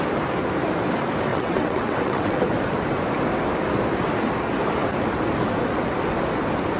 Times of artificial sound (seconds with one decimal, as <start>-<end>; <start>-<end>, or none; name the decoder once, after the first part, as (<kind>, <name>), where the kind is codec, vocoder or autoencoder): 1.3-2.4 (vocoder, WaveNeXt)

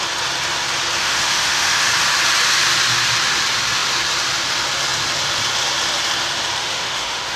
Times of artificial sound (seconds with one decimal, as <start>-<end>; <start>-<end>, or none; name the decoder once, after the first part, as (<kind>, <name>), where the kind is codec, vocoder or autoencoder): 1.0-1.9 (autoencoder, DAC-VAE); 6.6-7.4